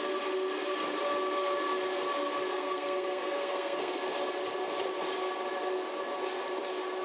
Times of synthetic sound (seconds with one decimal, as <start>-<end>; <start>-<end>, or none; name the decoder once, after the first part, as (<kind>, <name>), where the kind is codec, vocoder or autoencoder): 2.5-3.9 (codec, SNAC)